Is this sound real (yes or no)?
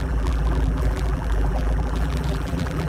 no